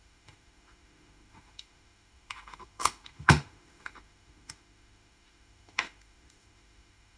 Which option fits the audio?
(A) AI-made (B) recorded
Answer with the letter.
A